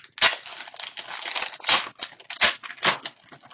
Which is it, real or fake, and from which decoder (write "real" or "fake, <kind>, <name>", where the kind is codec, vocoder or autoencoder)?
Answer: real